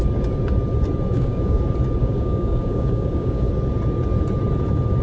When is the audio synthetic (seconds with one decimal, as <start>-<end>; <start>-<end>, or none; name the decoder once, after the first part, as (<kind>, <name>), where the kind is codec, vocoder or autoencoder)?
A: 1.1-1.6 (codec, DAC); 2.0-3.5